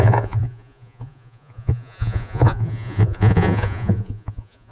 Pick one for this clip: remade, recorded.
remade